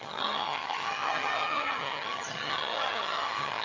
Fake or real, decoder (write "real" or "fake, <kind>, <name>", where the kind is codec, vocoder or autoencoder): fake, vocoder, HiFi-GAN